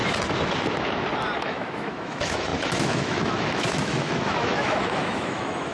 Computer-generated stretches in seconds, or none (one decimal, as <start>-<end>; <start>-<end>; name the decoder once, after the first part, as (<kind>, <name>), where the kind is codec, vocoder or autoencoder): 1.4-5.7 (autoencoder, DAC-VAE)